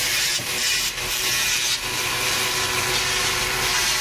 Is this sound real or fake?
fake